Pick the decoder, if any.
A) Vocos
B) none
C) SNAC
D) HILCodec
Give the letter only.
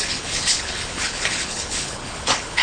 D